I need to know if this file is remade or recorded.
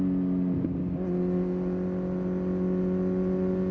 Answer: recorded